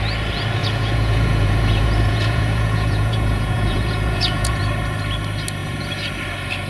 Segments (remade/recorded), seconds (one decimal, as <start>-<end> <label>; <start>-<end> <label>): 0.0-0.6 recorded; 0.6-4.6 remade; 4.6-5.6 recorded; 5.6-6.1 remade; 6.1-6.7 recorded

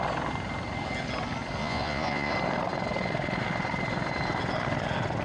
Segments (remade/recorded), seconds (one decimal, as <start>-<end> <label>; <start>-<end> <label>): 0.0-1.6 recorded; 1.6-2.3 remade; 2.3-5.2 recorded

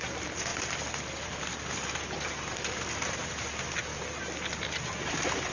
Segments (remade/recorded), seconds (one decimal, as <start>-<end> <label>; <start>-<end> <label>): 0.0-5.5 recorded

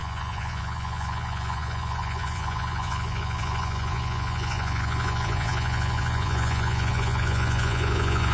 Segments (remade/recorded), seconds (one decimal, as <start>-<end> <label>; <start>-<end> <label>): 0.0-8.3 remade